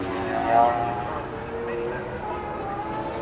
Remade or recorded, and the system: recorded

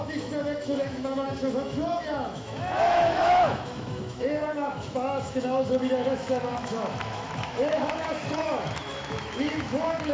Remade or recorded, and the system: remade, autoencoder, DAC-VAE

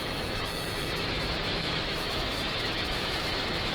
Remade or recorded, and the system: remade, autoencoder, DAC-VAE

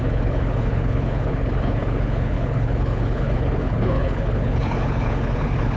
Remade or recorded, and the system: remade, codec, HILCodec